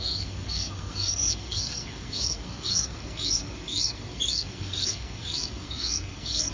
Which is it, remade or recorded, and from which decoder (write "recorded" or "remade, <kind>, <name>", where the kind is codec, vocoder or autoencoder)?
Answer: remade, codec, SNAC